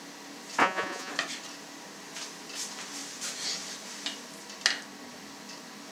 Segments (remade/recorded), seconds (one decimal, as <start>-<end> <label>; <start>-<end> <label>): 0.0-0.6 recorded; 0.6-1.1 remade; 1.1-5.9 recorded